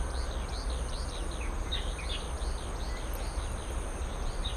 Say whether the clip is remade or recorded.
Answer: recorded